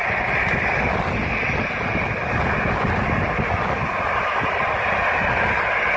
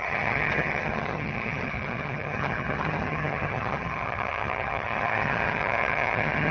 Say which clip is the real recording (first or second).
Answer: first